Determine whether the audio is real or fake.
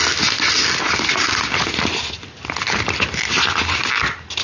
real